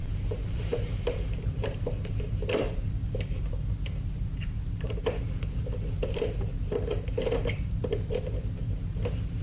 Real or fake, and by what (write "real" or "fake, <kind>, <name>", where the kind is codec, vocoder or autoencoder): fake, vocoder, BigVGAN v2